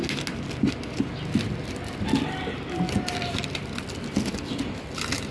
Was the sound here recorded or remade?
recorded